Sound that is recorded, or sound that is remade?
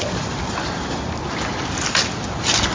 recorded